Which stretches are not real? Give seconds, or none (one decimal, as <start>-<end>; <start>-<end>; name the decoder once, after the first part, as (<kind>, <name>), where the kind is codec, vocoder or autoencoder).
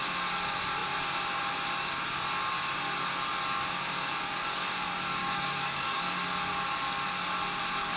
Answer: 5.2-6.0 (codec, DAC)